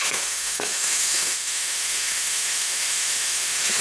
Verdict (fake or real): fake